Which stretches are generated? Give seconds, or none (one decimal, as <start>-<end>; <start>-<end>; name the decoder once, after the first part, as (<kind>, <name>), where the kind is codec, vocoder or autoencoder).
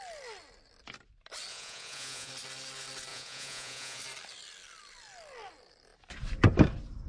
1.5-2.3 (vocoder, Vocos); 3.1-4.0